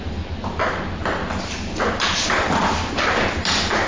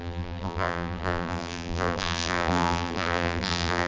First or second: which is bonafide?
first